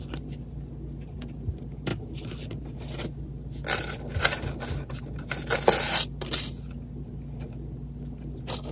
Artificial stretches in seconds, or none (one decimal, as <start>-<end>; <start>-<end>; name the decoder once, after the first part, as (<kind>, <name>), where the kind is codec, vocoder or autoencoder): none